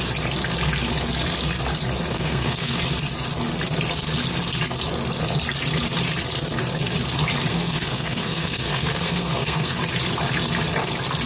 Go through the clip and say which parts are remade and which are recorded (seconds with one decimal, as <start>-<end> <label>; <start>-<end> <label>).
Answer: 0.0-2.1 recorded; 2.1-2.8 remade; 2.8-7.5 recorded; 7.5-9.8 remade; 9.8-11.3 recorded